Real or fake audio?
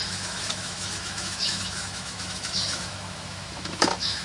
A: fake